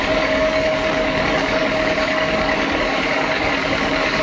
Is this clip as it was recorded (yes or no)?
no